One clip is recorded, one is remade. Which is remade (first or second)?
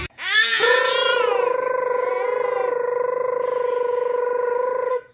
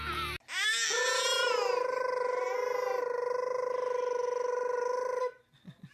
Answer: first